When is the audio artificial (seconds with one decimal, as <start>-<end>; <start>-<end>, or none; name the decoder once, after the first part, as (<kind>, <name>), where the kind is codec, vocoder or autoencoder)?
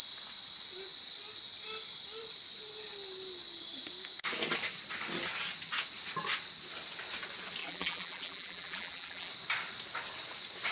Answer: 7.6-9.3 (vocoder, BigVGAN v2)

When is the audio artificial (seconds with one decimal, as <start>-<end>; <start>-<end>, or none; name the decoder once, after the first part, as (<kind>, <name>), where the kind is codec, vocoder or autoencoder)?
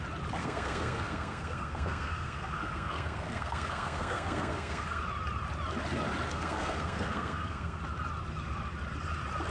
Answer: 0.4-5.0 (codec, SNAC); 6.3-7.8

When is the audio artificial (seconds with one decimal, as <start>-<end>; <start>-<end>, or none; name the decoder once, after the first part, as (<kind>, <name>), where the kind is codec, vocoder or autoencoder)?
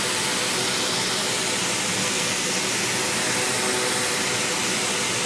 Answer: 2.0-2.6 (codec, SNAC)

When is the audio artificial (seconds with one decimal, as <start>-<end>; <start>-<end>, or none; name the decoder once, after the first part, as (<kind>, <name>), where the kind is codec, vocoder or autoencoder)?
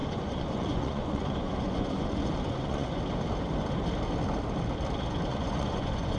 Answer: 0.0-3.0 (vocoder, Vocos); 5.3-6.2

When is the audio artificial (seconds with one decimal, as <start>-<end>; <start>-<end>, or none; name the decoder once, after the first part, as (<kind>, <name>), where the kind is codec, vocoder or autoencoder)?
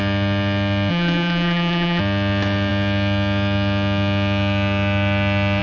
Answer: 0.9-2.0 (vocoder, BigVGAN v2)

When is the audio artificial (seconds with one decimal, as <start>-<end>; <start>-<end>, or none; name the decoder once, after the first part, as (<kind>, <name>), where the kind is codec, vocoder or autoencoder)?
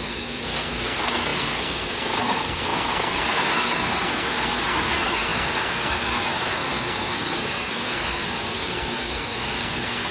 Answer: 0.0-10.1 (codec, SNAC)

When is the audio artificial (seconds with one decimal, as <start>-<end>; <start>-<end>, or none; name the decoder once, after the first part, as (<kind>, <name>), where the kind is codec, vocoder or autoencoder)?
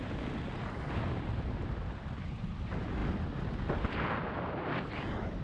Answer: none